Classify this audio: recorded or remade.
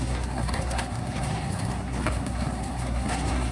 remade